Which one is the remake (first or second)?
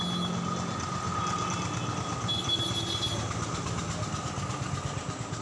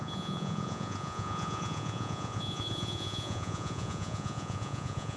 second